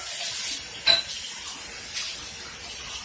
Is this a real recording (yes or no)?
yes